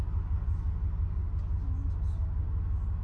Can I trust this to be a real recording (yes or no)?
yes